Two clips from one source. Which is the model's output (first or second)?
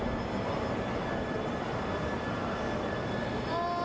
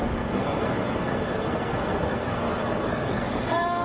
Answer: second